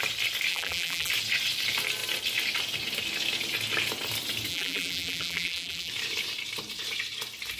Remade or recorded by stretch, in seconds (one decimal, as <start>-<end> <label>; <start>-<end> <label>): 0.0-0.5 recorded; 0.5-1.1 remade; 1.1-4.5 recorded; 4.5-5.9 remade; 5.9-7.6 recorded

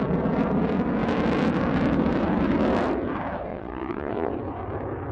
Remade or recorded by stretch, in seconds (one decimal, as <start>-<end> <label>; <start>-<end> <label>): 0.0-3.5 recorded; 3.5-4.3 remade; 4.3-5.1 recorded

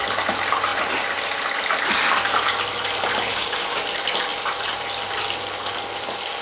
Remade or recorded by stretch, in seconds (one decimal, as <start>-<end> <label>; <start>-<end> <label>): 0.0-3.3 recorded; 3.3-3.8 remade; 3.8-6.4 recorded

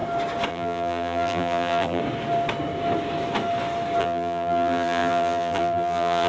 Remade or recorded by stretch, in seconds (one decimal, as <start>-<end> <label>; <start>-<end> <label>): 0.0-0.5 recorded; 0.5-2.0 remade; 2.0-4.0 recorded; 4.0-6.3 remade

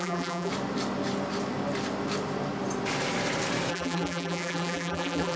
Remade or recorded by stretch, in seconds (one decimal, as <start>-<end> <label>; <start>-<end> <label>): 0.0-0.5 remade; 0.5-3.7 recorded; 3.7-5.4 remade

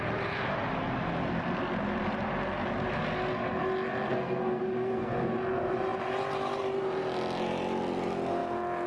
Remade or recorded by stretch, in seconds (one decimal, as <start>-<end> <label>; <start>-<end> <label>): 0.0-4.1 recorded; 4.1-5.1 remade; 5.1-8.9 recorded